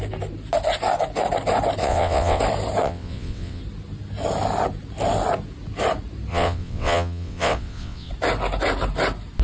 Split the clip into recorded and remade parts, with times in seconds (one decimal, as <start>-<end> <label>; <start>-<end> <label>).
0.0-1.8 recorded; 1.8-2.4 remade; 2.4-2.8 recorded; 2.8-3.6 remade; 3.6-6.3 recorded; 6.3-8.1 remade; 8.1-9.4 recorded